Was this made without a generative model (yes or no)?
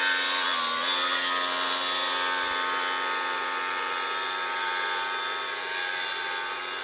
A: yes